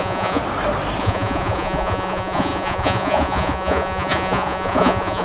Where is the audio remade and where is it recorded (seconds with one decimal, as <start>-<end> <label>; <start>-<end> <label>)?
0.0-0.4 remade; 0.4-1.0 recorded; 1.0-5.2 remade

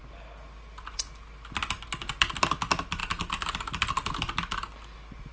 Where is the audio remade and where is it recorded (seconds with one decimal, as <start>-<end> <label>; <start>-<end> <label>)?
0.0-5.3 recorded

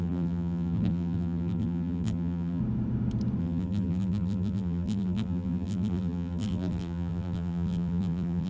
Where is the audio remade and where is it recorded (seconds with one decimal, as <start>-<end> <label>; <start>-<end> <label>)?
0.0-2.6 remade; 2.6-3.4 recorded; 3.4-8.5 remade

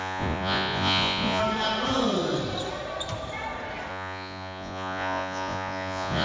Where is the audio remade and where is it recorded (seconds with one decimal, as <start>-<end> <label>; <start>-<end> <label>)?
0.0-1.4 remade; 1.4-3.9 recorded; 3.9-6.2 remade

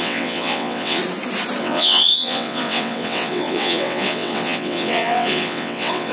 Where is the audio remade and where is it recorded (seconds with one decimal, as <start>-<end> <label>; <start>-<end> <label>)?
0.0-1.0 remade; 1.0-1.6 recorded; 1.6-6.1 remade

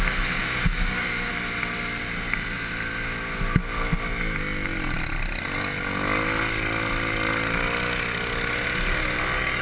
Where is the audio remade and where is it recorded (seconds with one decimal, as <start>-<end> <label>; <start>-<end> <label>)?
0.0-0.4 recorded; 0.4-1.3 remade; 1.3-9.6 recorded

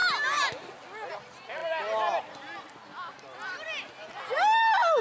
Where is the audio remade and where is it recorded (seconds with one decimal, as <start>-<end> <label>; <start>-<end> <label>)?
0.0-5.0 recorded